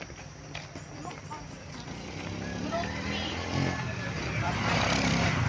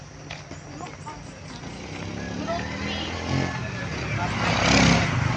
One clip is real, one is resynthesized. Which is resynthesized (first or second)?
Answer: first